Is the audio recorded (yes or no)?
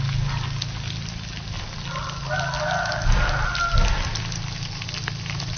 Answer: yes